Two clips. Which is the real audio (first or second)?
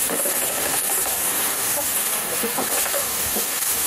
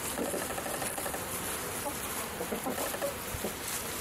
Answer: second